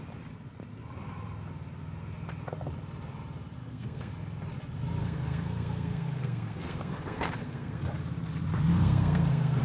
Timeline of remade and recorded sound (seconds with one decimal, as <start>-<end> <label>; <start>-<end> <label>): 0.0-3.6 recorded; 3.6-4.1 remade; 4.1-5.0 recorded; 5.0-7.8 remade; 7.8-8.7 recorded; 8.7-9.6 remade